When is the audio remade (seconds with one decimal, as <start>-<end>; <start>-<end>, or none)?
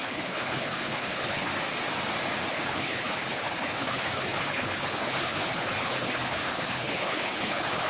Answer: 0.0-1.5; 2.5-7.9